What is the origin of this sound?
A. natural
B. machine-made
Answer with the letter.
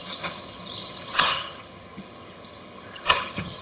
B